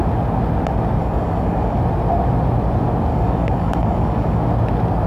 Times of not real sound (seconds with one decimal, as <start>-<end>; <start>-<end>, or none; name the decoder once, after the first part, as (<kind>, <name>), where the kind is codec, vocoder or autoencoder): 1.0-1.8 (codec, DAC); 3.1-4.4